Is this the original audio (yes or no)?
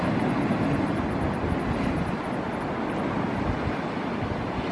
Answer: yes